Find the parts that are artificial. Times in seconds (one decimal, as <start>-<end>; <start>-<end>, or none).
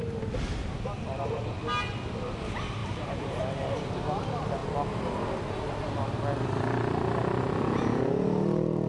2.8-3.4